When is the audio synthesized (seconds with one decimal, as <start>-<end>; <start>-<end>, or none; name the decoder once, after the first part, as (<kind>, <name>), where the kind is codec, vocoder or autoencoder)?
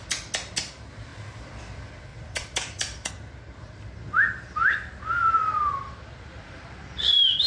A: 2.1-3.1 (vocoder, BigVGAN v2)